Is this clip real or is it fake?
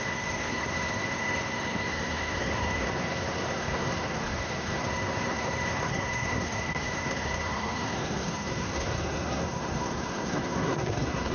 fake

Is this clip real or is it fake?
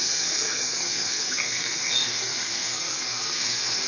fake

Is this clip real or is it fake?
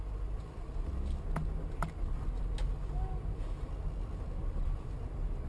real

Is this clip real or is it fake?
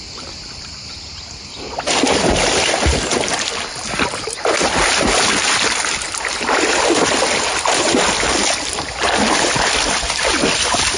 real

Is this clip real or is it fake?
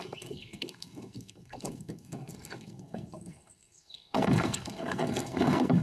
fake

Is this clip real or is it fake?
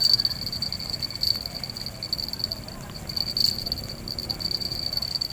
real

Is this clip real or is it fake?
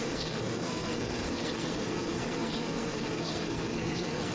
fake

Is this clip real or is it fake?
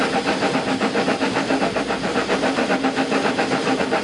real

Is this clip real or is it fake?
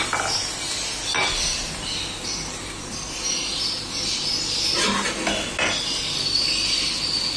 real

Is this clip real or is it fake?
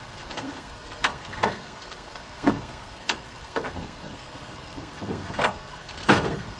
fake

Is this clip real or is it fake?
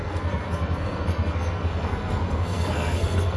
fake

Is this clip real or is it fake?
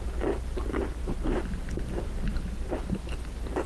real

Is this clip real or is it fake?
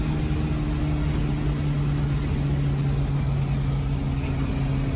real